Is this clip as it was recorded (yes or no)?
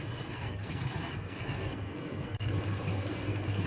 no